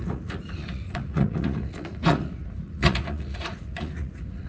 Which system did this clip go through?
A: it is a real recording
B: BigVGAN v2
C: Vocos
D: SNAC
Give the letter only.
C